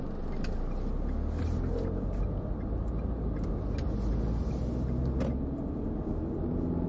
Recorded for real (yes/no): yes